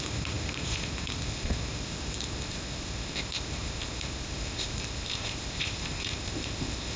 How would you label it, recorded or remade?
remade